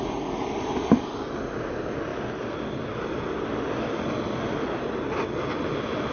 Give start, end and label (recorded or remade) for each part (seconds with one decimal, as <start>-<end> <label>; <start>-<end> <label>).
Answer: 0.0-6.1 recorded